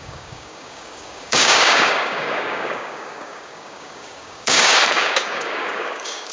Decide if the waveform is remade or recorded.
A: remade